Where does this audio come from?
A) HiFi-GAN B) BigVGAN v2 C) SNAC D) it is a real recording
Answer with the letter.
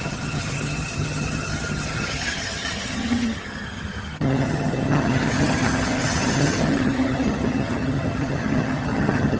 A